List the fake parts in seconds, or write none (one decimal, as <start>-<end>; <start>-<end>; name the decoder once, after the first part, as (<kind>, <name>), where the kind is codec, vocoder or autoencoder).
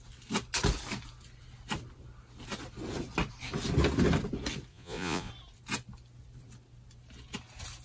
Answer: 4.7-5.3 (vocoder, Vocos)